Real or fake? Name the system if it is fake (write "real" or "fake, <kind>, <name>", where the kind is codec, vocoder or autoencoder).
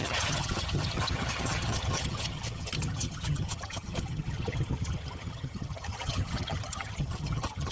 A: fake, vocoder, HiFi-GAN